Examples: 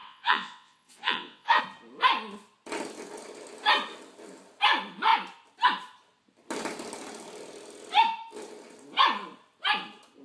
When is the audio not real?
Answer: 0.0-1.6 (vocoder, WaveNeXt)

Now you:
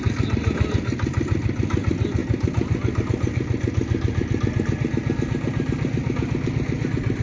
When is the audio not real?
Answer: none

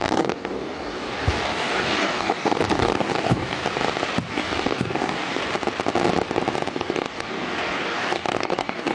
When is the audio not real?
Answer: 0.0-3.6 (codec, DAC); 4.3-5.4; 6.7-8.9

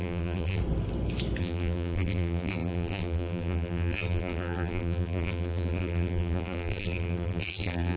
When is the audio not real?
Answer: 0.0-0.6 (vocoder, BigVGAN v2); 1.4-8.0

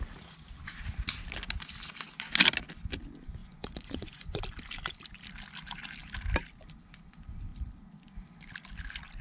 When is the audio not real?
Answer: 3.4-4.4 (vocoder, Vocos)

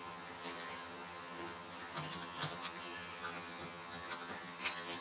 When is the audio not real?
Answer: 0.0-5.0 (vocoder, HiFi-GAN)

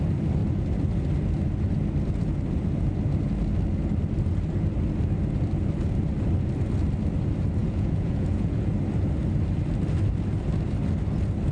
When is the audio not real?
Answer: 7.6-8.7 (vocoder, Vocos)

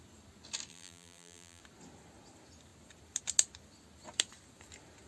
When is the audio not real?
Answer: 0.7-1.6 (vocoder, BigVGAN v2)